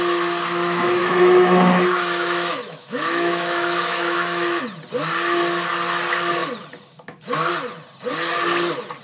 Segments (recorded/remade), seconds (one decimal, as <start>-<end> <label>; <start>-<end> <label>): 0.0-1.0 recorded; 1.0-4.6 remade; 4.6-9.0 recorded